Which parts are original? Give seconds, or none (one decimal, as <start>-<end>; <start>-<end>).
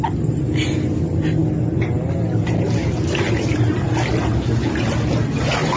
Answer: 0.0-5.8